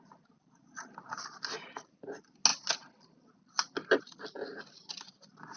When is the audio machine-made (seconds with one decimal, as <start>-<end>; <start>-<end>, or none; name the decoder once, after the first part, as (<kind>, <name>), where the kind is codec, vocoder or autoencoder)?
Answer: none